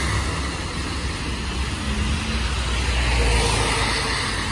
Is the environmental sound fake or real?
real